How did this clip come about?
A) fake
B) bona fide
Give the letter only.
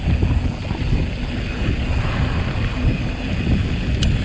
B